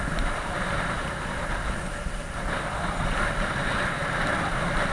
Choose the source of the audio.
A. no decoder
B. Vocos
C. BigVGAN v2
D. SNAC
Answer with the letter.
A